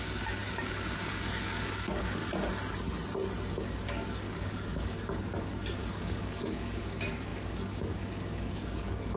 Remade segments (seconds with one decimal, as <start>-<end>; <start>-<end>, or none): 0.0-2.2; 3.5-9.2